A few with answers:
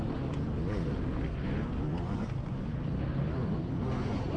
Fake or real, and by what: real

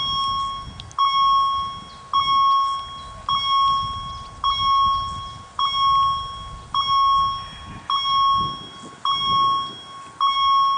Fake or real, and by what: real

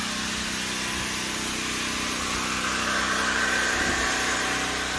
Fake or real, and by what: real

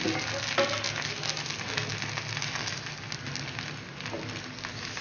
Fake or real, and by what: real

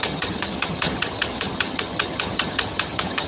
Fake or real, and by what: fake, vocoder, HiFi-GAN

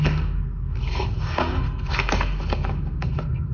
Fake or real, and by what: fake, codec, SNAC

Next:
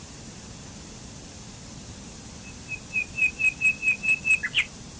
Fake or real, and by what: real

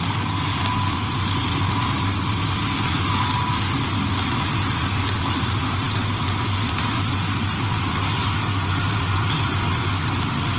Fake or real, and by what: real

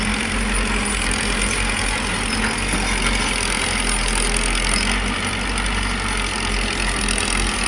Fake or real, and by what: real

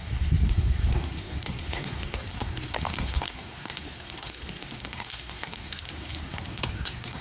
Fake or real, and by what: fake, codec, SNAC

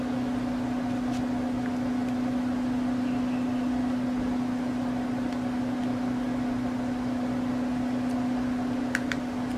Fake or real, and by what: real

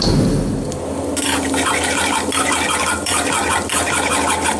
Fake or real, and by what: fake, vocoder, BigVGAN v2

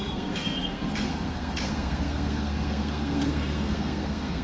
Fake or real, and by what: fake, codec, SNAC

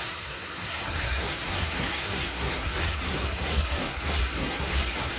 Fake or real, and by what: fake, codec, SNAC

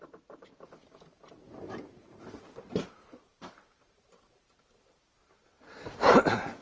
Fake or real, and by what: fake, vocoder, BigVGAN v2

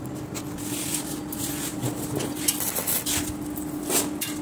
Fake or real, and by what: real